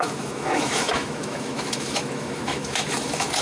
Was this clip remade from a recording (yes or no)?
yes